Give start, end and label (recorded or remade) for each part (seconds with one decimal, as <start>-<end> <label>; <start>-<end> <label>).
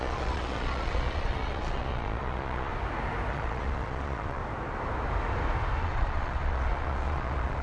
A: 0.0-2.7 remade; 2.7-3.3 recorded; 3.3-4.4 remade; 4.4-5.8 recorded; 5.8-7.6 remade